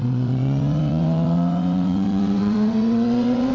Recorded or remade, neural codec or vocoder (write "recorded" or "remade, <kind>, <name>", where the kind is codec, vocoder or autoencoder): remade, vocoder, WaveNeXt